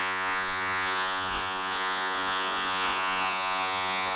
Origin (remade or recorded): remade